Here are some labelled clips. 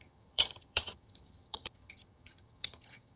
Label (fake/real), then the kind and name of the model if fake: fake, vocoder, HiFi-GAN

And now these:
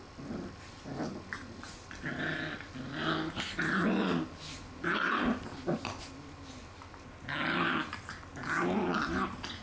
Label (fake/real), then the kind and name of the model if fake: real